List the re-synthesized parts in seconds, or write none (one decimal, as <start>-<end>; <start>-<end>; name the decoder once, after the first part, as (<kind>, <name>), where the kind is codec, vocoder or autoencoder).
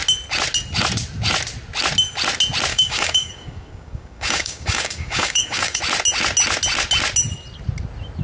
2.7-5.8 (codec, DAC)